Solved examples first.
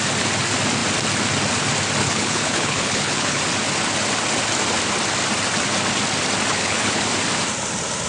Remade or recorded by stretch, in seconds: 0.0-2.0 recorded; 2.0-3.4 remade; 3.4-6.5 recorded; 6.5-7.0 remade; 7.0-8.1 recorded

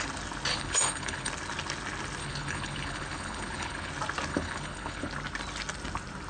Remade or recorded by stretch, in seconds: 0.0-0.5 recorded; 0.5-1.3 remade; 1.3-2.2 recorded; 2.2-3.9 remade; 3.9-4.3 recorded; 4.3-5.1 remade; 5.1-6.3 recorded

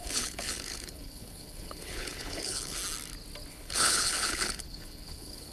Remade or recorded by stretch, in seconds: 0.0-2.8 remade; 2.8-3.5 recorded; 3.5-5.5 remade

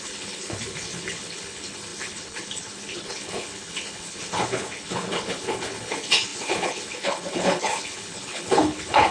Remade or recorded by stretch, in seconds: 0.0-9.1 remade

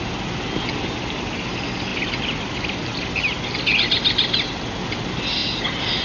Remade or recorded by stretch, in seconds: 0.0-6.0 recorded

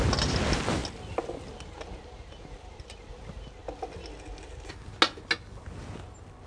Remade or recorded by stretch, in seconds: 0.0-6.5 recorded

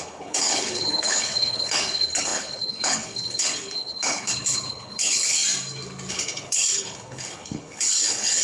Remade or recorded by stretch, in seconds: 0.0-5.4 remade; 5.4-6.1 recorded; 6.1-8.4 remade